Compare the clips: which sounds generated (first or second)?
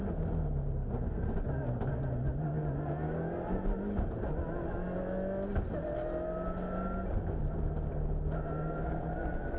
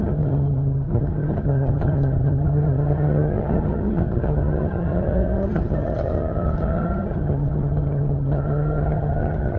second